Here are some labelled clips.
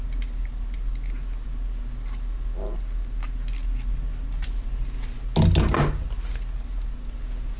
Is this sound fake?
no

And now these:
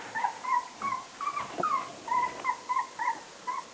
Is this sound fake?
no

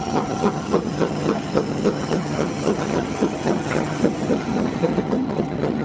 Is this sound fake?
yes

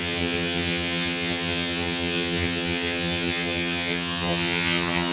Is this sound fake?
yes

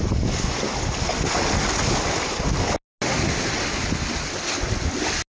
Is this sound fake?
no